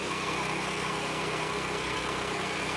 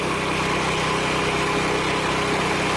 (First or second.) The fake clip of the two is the first